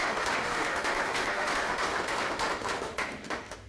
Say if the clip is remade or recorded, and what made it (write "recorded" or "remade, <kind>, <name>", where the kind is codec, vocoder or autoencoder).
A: remade, autoencoder, DAC-VAE